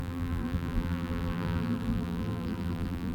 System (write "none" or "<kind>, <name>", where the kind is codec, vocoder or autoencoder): vocoder, BigVGAN v2